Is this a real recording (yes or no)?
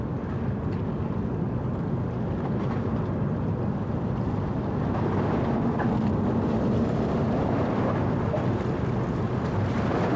yes